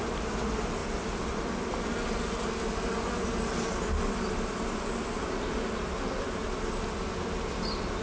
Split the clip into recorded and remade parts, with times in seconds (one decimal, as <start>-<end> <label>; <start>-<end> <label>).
0.0-8.0 recorded